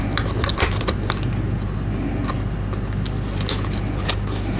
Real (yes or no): yes